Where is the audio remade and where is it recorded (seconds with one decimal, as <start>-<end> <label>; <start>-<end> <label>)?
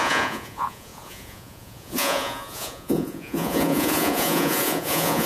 0.0-5.3 remade